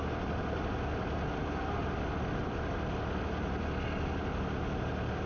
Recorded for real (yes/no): yes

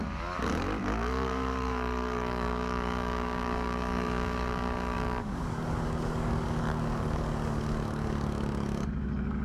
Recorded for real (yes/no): no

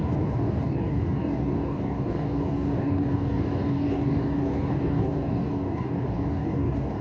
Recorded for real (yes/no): no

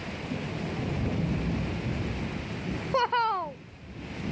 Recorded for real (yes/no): yes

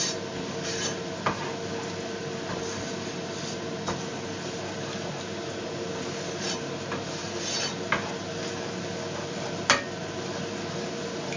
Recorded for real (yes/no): yes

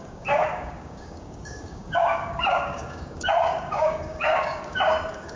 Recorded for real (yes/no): no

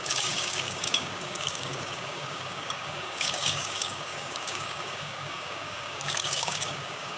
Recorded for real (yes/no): no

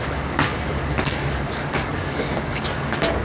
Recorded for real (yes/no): no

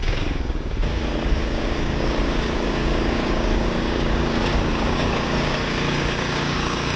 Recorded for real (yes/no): no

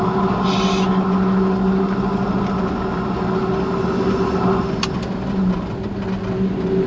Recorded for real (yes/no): yes